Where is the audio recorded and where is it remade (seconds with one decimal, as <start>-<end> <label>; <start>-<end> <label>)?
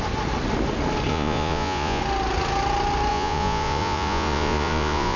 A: 0.0-1.1 recorded; 1.1-2.0 remade; 2.0-3.1 recorded; 3.1-5.2 remade